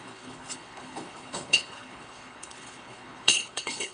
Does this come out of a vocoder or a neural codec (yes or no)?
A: yes